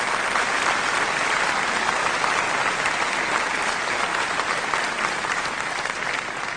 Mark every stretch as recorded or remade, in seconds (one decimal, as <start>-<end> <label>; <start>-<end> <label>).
0.0-6.6 recorded